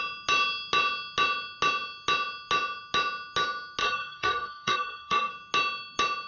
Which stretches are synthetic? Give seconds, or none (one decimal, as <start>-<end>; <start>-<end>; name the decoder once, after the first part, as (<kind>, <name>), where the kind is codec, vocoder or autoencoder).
3.8-5.3 (codec, SNAC)